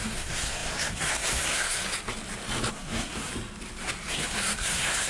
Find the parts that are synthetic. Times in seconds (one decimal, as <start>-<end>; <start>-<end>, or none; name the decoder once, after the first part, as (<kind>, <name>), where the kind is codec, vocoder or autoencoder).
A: 0.0-1.8 (codec, SNAC); 2.7-3.3; 4.1-5.1